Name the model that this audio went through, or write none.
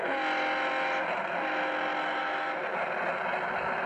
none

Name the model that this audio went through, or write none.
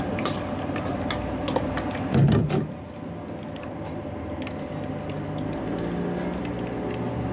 none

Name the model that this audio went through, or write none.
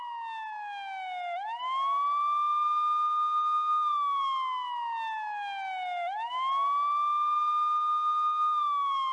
none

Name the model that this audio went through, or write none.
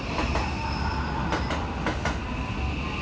none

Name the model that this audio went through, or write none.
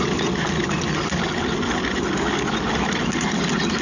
none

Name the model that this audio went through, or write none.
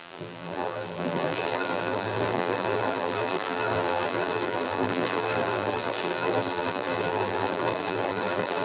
vocoder, BigVGAN v2